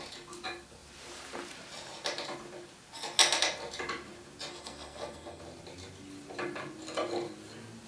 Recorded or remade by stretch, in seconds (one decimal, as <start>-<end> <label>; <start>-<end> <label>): 0.0-4.5 recorded; 4.5-5.4 remade; 5.4-7.9 recorded